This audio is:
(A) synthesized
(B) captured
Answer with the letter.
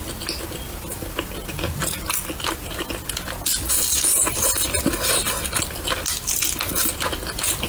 B